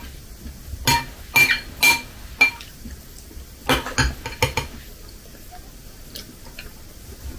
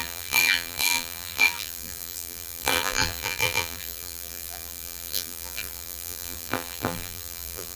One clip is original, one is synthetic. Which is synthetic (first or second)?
second